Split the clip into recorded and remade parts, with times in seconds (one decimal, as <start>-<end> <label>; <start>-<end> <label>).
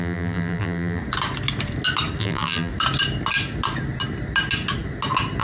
0.0-1.0 remade; 1.0-2.2 recorded; 2.2-2.7 remade; 2.7-5.4 recorded